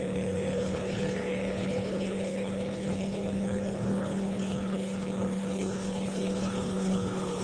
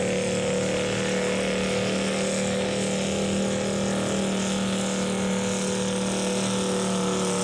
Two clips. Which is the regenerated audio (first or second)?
first